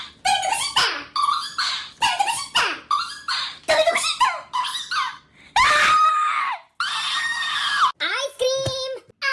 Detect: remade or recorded recorded